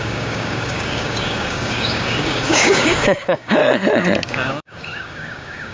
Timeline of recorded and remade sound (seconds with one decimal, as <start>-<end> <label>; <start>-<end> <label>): 0.0-3.6 remade; 3.6-4.3 recorded; 4.3-5.7 remade